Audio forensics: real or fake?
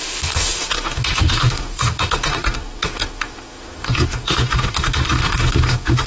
fake